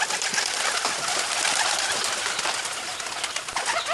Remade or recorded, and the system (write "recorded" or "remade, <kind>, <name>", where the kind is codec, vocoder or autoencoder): recorded